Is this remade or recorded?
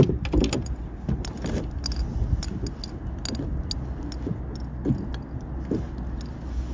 recorded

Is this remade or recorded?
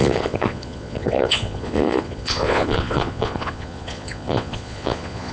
remade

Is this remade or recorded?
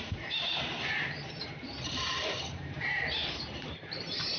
remade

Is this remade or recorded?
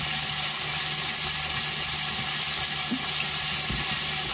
recorded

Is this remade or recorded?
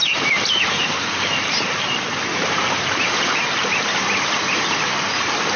remade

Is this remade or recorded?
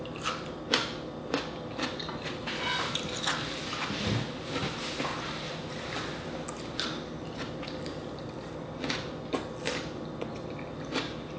recorded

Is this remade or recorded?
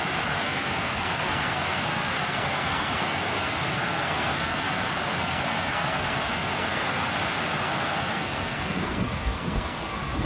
remade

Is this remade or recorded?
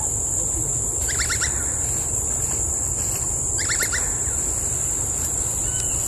recorded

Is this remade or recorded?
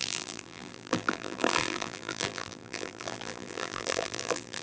remade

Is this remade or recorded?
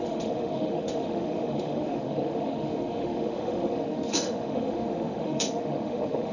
remade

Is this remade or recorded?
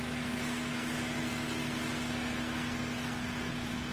remade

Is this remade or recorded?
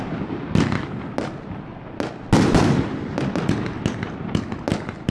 recorded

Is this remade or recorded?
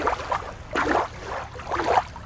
recorded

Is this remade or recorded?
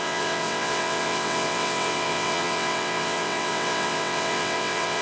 remade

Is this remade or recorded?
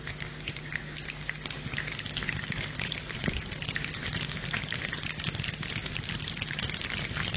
recorded